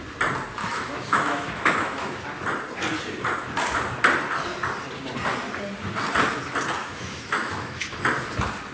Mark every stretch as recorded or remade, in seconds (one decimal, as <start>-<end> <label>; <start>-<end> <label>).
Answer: 0.0-0.6 recorded; 0.6-2.2 remade; 2.2-6.8 recorded; 6.8-7.9 remade; 7.9-8.7 recorded